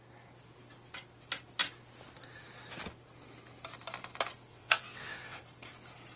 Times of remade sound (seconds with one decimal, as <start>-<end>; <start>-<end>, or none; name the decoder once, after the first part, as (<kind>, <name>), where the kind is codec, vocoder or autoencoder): 4.5-5.4 (vocoder, WaveNeXt)

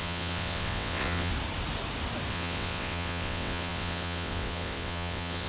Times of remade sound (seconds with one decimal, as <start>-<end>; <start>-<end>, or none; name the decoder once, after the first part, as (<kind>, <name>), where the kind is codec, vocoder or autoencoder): 0.0-1.3 (vocoder, WaveNeXt); 2.3-5.5

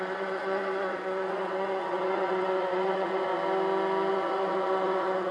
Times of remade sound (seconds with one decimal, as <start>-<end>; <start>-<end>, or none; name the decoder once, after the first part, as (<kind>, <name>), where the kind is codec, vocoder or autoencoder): 0.0-3.3 (vocoder, WaveNeXt); 4.1-5.3

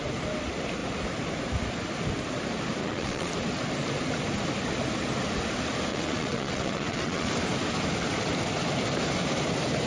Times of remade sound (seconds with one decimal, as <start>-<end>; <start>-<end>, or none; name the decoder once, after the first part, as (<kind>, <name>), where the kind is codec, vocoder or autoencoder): 2.8-3.3 (vocoder, WaveNeXt); 5.9-7.3